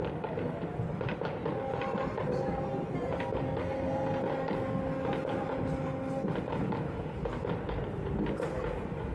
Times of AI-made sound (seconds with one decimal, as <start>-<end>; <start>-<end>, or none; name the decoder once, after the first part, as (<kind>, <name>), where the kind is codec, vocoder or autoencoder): 3.6-4.2 (codec, SNAC)

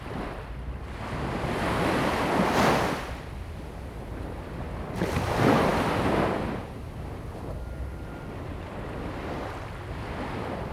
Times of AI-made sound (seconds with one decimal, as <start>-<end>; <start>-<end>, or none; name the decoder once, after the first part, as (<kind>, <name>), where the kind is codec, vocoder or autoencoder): none